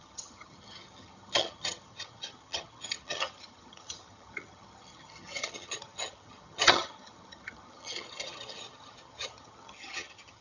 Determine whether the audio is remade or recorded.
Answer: remade